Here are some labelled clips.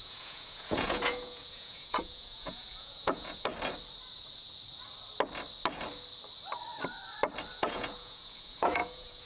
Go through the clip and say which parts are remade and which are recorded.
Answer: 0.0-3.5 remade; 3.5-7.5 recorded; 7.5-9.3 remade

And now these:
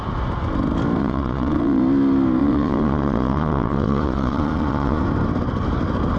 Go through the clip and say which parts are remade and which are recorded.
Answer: 0.0-1.0 recorded; 1.0-1.8 remade; 1.8-2.4 recorded; 2.4-5.0 remade; 5.0-6.2 recorded

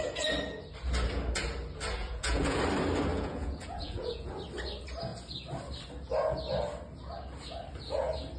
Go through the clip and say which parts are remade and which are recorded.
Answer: 0.0-2.0 recorded; 2.0-2.6 remade; 2.6-3.1 recorded; 3.1-4.3 remade; 4.3-8.4 recorded

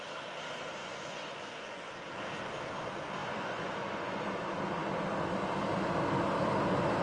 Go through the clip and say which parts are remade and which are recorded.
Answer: 0.0-0.8 recorded; 0.8-2.0 remade; 2.0-3.2 recorded; 3.2-4.2 remade; 4.2-7.0 recorded

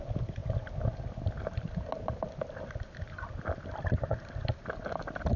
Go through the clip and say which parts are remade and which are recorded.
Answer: 0.0-5.4 recorded

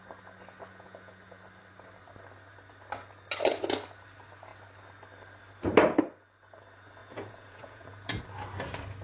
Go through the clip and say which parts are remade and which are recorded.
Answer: 0.0-0.7 recorded; 0.7-1.4 remade; 1.4-7.0 recorded; 7.0-8.2 remade; 8.2-9.0 recorded